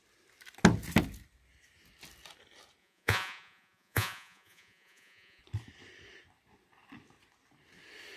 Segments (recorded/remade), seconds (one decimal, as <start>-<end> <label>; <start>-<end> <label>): 0.0-2.8 recorded; 2.8-5.4 remade; 5.4-8.2 recorded